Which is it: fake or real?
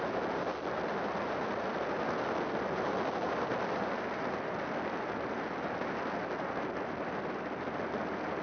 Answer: real